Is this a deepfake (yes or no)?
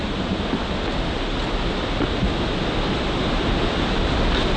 no